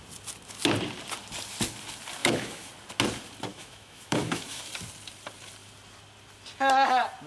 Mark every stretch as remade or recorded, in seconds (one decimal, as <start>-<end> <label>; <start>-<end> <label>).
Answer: 0.0-2.2 recorded; 2.2-2.7 remade; 2.7-3.5 recorded; 3.5-4.6 remade; 4.6-7.3 recorded